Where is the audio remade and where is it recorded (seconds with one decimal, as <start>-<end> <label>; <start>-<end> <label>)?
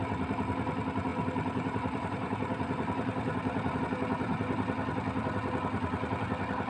0.0-1.1 recorded; 1.1-3.8 remade; 3.8-6.7 recorded